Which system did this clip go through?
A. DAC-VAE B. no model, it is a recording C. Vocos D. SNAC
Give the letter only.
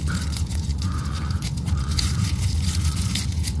C